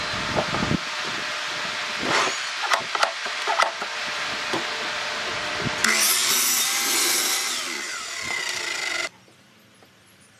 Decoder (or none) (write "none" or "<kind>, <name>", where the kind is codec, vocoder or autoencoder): none